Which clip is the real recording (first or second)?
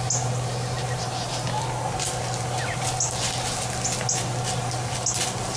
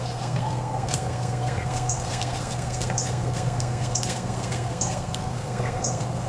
first